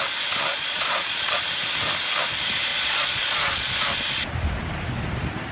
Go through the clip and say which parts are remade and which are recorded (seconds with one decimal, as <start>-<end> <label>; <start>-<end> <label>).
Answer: 0.0-0.5 recorded; 0.5-1.4 remade; 1.4-2.7 recorded; 2.7-3.8 remade; 3.8-5.5 recorded